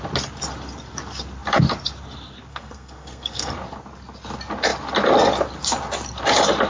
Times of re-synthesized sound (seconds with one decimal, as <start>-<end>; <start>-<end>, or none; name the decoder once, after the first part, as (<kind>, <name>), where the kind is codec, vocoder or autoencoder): 2.5-3.5 (codec, SNAC)